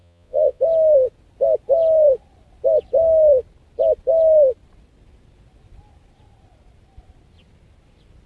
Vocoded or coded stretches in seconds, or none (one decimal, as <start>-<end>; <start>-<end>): 0.0-0.6